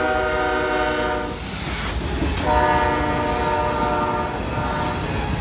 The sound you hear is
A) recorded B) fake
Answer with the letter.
A